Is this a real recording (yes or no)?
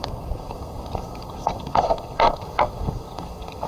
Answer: no